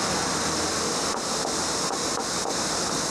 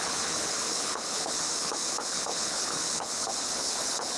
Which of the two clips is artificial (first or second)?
second